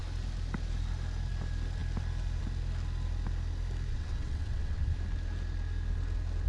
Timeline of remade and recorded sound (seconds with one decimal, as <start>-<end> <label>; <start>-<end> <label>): 0.0-3.9 recorded; 3.9-4.9 remade; 4.9-6.5 recorded